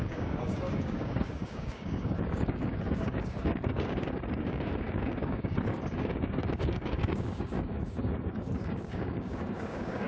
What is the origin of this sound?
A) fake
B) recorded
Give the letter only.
A